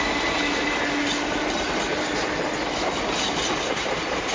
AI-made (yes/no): no